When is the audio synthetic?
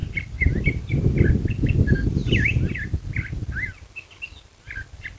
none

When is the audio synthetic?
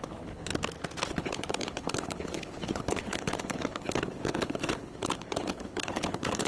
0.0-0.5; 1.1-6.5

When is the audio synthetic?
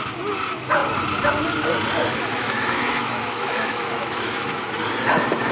2.3-4.6